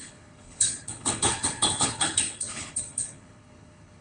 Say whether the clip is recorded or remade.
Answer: remade